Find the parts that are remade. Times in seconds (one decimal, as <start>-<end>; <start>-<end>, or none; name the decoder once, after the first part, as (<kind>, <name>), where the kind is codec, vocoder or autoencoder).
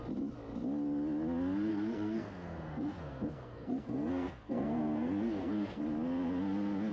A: 1.7-5.8 (codec, SNAC)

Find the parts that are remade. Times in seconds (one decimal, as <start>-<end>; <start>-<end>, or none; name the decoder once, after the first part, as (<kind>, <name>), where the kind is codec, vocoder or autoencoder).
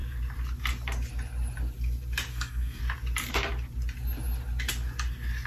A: 2.3-2.8 (codec, SNAC)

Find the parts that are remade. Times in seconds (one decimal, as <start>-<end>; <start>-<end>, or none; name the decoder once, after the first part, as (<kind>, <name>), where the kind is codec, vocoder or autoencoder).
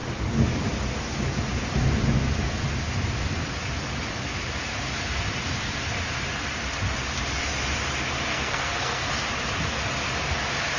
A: 8.3-9.1 (codec, SNAC)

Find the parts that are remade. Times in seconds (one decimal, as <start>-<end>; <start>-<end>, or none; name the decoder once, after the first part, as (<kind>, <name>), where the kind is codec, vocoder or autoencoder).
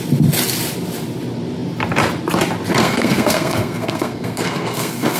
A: 2.8-5.2 (codec, SNAC)